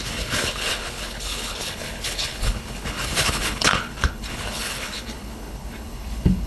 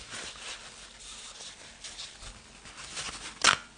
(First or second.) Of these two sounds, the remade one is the first